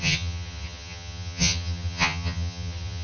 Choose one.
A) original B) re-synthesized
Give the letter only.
B